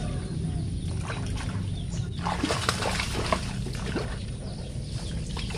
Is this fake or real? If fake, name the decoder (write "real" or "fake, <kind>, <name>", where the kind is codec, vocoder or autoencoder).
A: real